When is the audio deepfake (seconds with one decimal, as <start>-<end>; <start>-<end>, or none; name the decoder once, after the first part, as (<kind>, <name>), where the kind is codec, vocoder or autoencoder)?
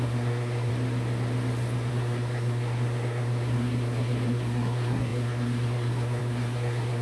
0.0-0.7 (codec, SNAC); 1.9-7.0